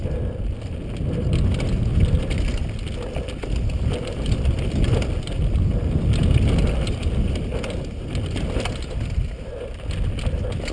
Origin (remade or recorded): recorded